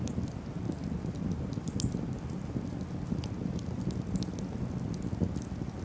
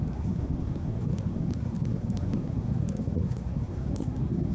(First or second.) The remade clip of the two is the second